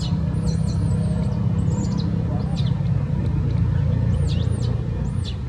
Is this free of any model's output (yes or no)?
yes